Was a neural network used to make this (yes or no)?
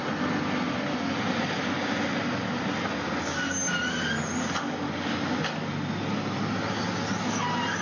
no